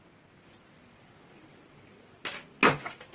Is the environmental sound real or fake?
real